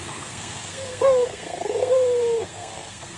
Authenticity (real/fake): fake